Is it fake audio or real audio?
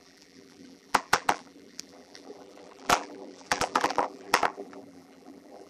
fake